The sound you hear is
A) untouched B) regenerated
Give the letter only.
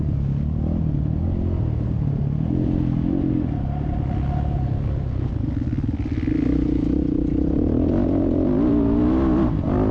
A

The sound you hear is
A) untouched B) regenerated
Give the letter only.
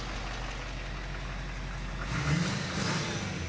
A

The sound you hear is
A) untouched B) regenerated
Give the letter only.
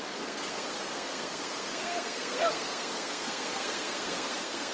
B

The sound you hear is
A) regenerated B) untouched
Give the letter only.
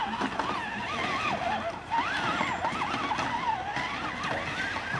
B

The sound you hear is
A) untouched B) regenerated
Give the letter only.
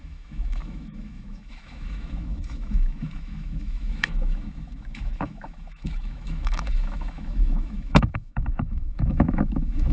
B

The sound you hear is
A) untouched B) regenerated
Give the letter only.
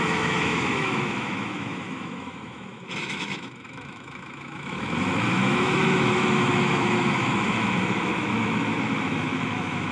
B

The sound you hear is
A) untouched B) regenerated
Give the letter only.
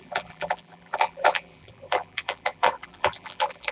B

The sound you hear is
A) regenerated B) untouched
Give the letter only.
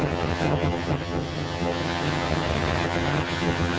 A